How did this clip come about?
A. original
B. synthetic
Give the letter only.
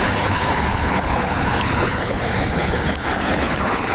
B